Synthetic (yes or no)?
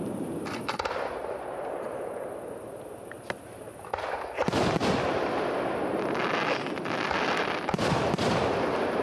no